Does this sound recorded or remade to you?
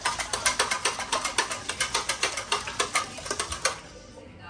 recorded